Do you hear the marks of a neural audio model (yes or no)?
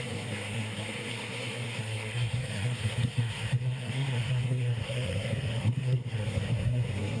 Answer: yes